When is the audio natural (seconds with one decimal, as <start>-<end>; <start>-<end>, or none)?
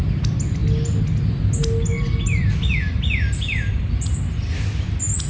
0.0-5.3